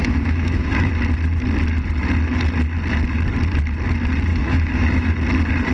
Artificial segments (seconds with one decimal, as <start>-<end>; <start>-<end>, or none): 0.0-0.9; 4.3-5.1